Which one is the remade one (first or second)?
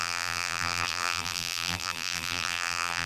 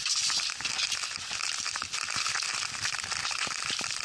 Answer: first